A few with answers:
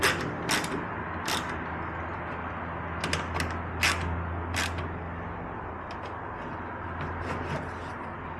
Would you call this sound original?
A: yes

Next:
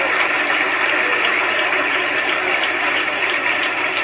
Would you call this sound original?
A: no